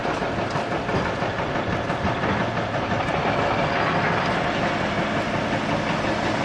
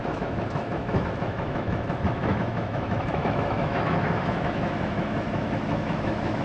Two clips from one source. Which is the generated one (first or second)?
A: second